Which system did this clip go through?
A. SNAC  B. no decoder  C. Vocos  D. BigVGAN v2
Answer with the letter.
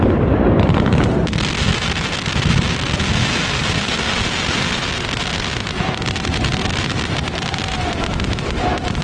B